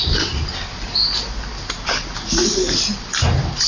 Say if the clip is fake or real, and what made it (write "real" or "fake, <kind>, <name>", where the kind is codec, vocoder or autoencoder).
real